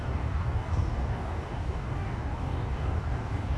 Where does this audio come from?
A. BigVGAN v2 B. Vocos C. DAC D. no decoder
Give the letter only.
C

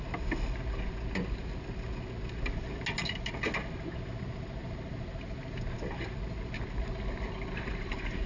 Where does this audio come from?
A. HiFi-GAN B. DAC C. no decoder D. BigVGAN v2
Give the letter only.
C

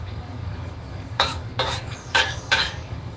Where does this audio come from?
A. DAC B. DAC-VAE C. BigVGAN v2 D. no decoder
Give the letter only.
A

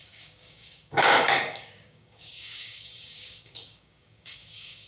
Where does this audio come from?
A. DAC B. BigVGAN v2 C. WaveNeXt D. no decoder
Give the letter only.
A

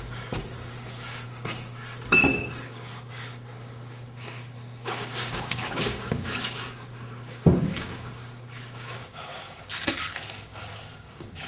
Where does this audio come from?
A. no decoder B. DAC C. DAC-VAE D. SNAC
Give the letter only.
B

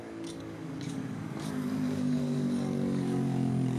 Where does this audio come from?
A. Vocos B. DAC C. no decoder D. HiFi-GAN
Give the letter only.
B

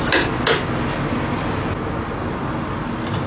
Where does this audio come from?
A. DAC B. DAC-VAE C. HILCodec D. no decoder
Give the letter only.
D